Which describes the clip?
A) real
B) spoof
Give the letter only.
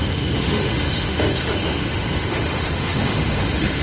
B